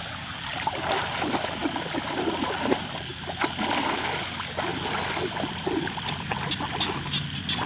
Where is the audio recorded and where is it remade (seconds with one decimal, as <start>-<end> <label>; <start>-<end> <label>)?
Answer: 0.0-7.7 recorded